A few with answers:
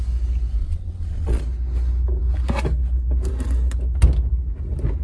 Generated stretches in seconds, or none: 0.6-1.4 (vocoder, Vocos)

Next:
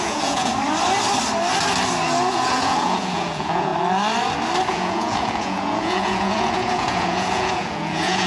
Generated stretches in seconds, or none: 0.0-0.5 (vocoder, Vocos); 2.3-3.7; 4.7-8.3

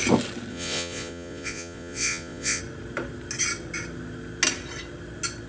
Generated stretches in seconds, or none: 0.5-2.6 (vocoder, Vocos)

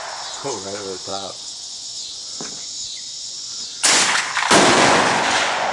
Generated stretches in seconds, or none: 1.1-4.3 (vocoder, Vocos); 4.7-5.7

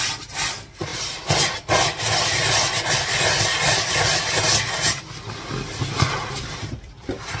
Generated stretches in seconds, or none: none

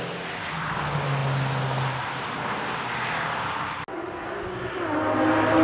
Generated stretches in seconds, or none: none

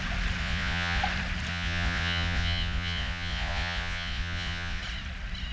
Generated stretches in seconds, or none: 0.4-1.0 (vocoder, Vocos); 1.5-4.8

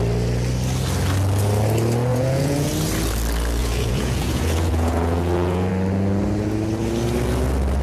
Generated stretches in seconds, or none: 2.1-2.7 (vocoder, Vocos); 3.6-5.7